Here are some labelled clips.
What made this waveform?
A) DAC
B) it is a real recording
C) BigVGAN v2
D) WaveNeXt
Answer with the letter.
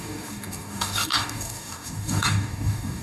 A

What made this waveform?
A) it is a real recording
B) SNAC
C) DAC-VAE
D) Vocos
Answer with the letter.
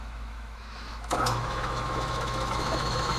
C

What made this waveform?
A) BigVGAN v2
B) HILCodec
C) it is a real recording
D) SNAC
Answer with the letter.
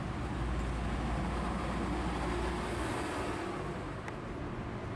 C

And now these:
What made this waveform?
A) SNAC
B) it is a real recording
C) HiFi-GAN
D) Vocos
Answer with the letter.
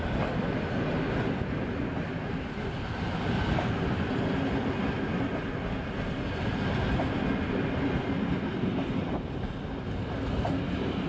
B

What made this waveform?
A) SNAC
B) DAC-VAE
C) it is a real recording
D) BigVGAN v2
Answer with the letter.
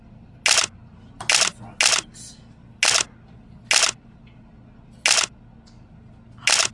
C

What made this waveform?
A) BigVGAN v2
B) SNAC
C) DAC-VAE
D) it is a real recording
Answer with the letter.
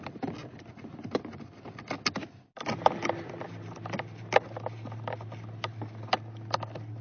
D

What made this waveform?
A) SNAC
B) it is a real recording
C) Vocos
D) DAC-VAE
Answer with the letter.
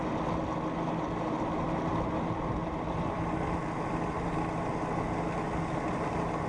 B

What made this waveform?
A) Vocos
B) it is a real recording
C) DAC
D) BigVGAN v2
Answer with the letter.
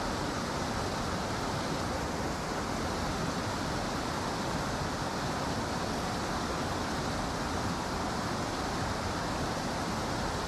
B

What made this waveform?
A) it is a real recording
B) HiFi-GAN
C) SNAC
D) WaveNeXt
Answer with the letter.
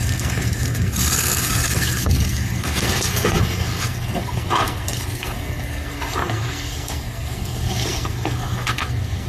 C